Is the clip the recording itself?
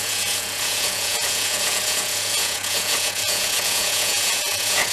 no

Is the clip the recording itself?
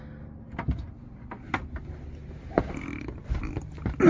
yes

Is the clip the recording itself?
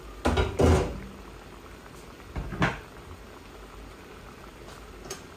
yes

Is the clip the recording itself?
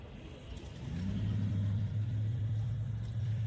no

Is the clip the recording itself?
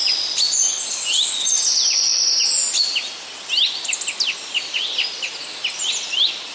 yes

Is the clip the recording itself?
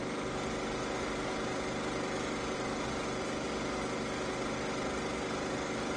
yes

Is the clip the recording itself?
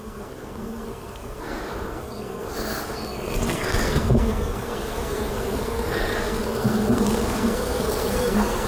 no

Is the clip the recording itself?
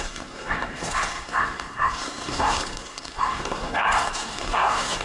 no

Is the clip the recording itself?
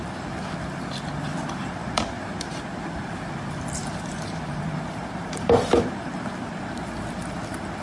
no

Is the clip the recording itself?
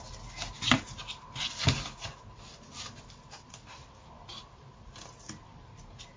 yes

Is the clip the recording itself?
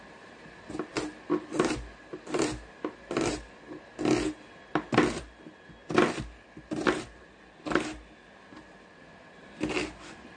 yes